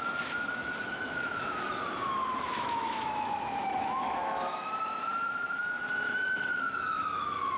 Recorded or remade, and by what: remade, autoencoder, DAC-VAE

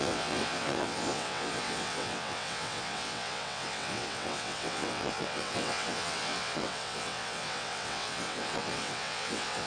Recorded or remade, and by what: remade, vocoder, WaveNeXt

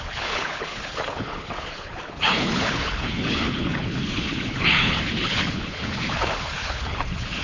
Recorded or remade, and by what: remade, codec, HILCodec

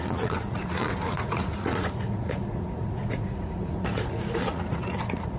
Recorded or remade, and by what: remade, vocoder, Vocos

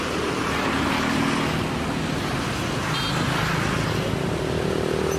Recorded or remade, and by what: recorded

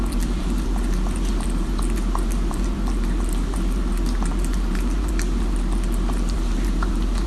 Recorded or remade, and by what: remade, vocoder, BigVGAN v2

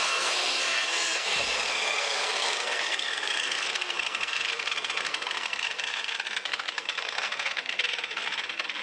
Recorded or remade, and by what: remade, codec, SNAC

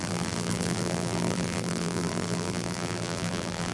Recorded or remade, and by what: remade, vocoder, BigVGAN v2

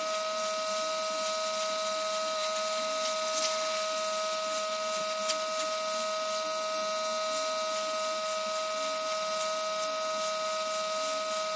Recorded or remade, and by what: recorded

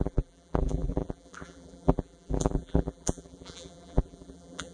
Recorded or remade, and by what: remade, vocoder, BigVGAN v2